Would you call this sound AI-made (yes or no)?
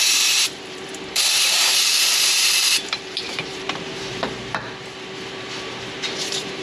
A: yes